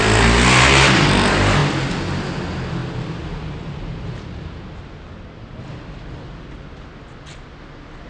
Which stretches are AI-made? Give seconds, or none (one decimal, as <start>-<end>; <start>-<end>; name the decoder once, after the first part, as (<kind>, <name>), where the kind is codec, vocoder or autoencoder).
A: none